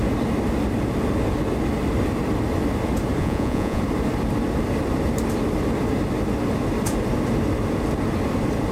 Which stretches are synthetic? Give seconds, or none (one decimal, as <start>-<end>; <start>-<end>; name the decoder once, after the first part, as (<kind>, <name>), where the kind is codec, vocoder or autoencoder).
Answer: 3.2-3.8 (vocoder, Vocos)